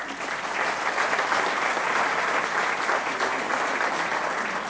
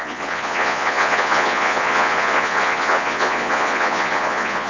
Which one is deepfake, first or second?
second